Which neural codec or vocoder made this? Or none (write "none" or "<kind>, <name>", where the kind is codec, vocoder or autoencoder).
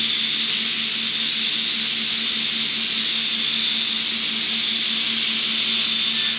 none